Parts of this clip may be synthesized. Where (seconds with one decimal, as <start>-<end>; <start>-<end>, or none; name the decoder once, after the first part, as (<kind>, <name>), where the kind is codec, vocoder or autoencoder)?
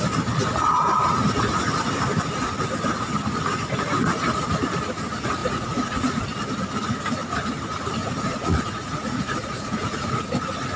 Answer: 5.4-6.2 (vocoder, Vocos); 8.0-10.1